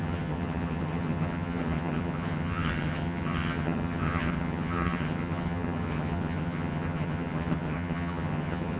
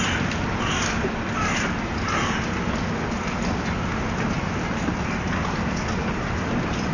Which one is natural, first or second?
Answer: second